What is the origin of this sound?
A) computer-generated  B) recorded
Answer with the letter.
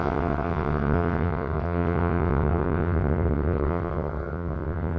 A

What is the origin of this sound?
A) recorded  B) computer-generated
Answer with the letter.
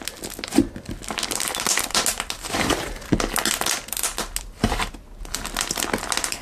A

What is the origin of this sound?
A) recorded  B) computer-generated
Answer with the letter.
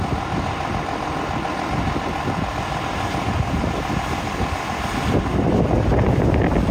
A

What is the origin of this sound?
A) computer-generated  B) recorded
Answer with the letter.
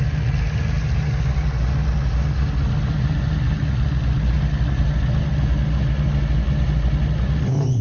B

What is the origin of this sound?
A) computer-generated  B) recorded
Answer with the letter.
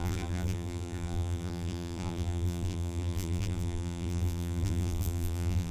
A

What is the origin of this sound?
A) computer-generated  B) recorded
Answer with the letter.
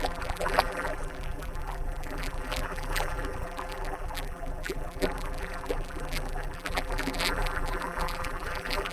A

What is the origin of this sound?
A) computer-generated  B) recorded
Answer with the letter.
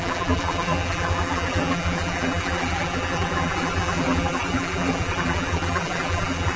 A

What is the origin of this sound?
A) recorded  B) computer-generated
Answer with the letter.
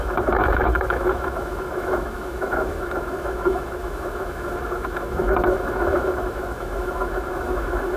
B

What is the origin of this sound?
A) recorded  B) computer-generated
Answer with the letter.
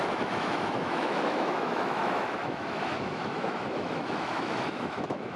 B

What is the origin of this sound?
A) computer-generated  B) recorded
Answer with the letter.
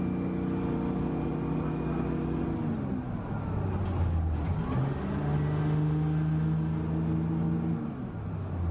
B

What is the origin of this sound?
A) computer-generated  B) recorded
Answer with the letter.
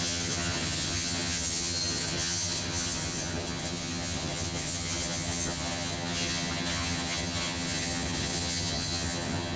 A